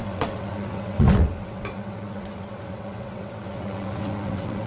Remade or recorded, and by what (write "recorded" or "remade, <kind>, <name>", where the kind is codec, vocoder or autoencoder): remade, vocoder, WaveNeXt